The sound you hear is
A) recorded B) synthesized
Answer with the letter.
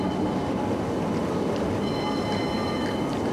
A